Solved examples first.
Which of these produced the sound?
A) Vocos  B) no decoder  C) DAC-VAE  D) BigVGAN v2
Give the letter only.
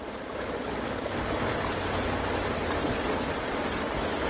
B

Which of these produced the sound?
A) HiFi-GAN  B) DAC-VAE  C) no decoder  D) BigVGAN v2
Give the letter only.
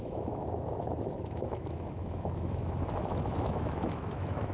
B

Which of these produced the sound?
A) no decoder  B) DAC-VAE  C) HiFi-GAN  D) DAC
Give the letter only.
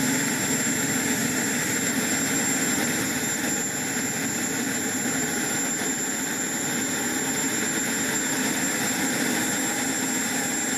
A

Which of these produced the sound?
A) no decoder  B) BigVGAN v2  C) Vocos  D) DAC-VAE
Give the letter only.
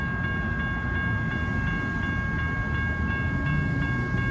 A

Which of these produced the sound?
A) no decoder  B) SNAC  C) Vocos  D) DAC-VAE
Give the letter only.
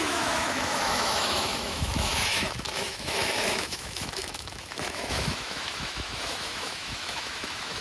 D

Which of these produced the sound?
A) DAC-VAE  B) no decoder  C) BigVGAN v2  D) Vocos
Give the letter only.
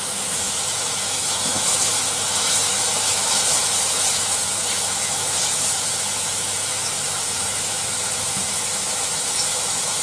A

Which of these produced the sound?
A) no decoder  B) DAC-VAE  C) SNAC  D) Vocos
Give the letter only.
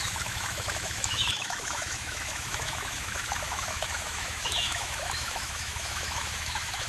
B